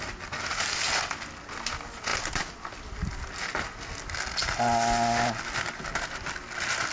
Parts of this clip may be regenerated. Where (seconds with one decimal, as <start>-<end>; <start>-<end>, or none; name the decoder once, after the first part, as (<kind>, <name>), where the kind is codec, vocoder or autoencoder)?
none